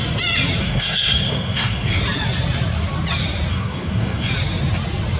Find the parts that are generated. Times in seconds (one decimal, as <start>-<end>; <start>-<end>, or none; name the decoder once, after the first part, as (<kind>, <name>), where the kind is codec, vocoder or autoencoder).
0.6-2.0 (codec, SNAC); 3.5-4.3